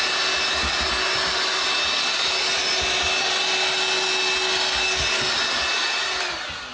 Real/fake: real